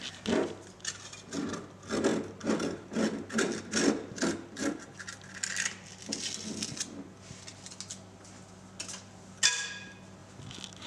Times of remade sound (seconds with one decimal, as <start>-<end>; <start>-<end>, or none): none